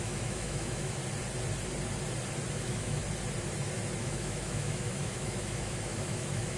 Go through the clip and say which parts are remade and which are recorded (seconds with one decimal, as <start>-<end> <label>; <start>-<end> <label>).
0.0-1.0 remade; 1.0-2.5 recorded; 2.5-3.0 remade; 3.0-4.0 recorded; 4.0-6.6 remade